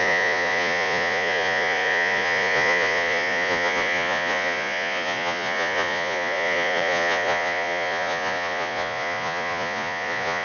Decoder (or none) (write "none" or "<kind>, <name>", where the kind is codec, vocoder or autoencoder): vocoder, Vocos